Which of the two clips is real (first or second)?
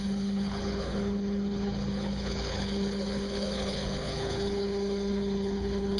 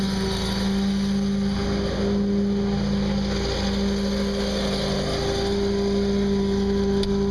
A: second